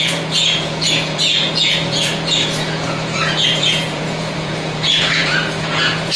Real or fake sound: fake